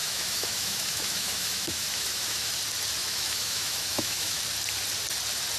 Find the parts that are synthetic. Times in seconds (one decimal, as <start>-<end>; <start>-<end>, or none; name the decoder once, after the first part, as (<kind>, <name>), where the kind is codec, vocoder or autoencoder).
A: 0.0-2.5 (autoencoder, DAC-VAE); 3.0-4.4